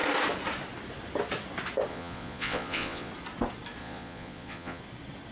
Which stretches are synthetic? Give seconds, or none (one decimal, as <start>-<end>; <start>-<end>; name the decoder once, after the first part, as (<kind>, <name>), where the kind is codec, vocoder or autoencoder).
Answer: 1.9-3.1 (vocoder, Vocos); 3.8-4.8